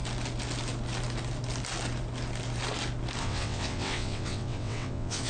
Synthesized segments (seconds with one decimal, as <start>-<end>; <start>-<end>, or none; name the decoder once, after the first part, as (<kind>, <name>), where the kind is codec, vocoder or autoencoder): 3.2-5.3 (vocoder, WaveNeXt)